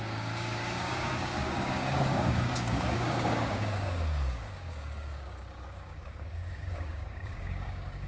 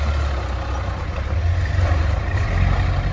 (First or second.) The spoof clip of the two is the first